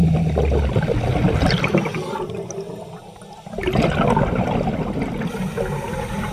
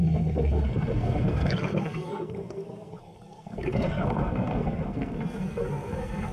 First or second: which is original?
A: first